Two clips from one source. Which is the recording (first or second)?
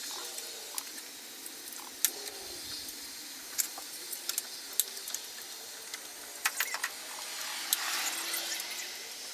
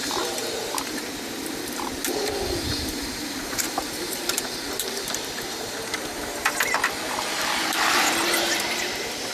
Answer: first